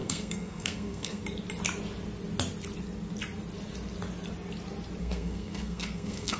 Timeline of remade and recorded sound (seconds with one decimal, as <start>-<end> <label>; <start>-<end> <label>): 0.0-1.2 remade; 1.2-5.0 recorded; 5.0-6.4 remade